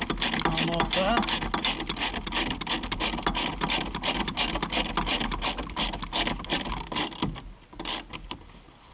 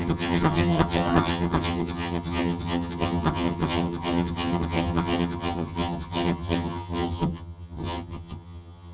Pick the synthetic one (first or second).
second